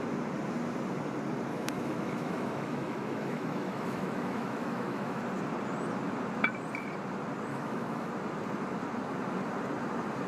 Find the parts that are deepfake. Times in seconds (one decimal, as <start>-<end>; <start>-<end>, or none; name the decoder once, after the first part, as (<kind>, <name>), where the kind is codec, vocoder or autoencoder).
1.5-5.2 (autoencoder, DAC-VAE); 7.5-8.1